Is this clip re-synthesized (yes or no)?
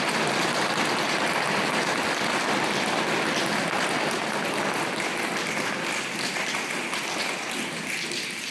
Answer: no